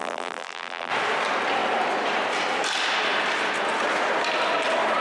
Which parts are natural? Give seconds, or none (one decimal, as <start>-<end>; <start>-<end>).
0.9-5.0